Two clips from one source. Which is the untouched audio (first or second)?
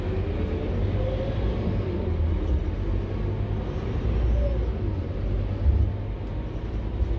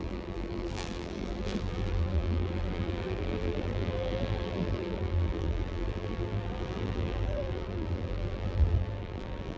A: first